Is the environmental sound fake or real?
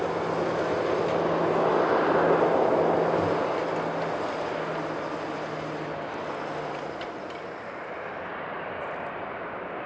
real